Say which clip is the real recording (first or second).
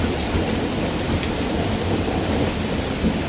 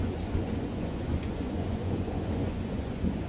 first